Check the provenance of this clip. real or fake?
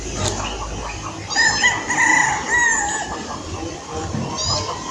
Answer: real